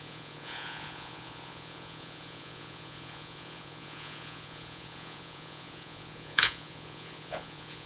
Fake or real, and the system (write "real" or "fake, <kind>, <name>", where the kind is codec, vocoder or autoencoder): fake, vocoder, Vocos